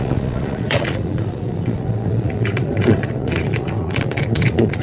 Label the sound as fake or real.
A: fake